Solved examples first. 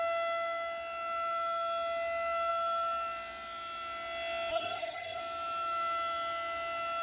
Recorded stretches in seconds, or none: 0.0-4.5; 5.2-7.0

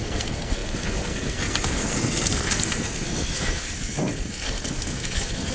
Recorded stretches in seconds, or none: none